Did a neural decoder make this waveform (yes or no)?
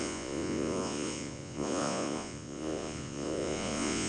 yes